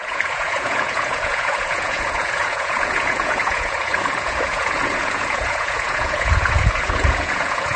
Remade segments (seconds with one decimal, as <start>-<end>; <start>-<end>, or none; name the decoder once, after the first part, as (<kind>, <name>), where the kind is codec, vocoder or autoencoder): 0.0-7.8 (vocoder, Vocos)